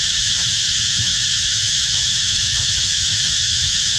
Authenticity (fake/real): fake